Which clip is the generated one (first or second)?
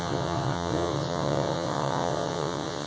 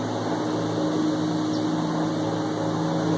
first